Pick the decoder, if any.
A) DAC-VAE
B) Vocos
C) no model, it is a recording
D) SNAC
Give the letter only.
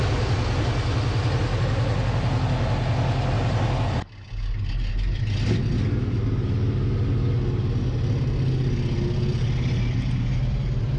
C